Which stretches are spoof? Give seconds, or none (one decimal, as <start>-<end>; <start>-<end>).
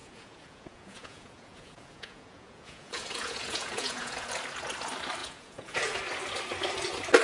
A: 0.0-4.3; 5.2-6.0